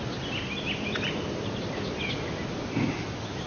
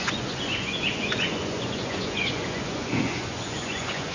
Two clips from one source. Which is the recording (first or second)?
first